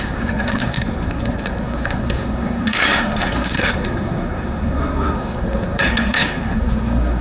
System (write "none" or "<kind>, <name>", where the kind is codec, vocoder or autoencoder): codec, SNAC